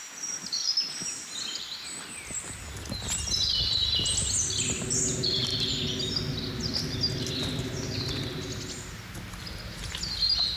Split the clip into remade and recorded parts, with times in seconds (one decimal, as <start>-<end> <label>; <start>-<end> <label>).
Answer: 0.0-10.6 recorded